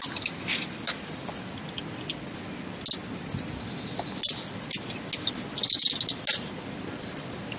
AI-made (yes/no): no